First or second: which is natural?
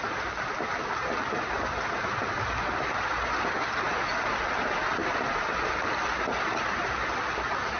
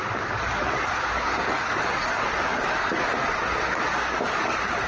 first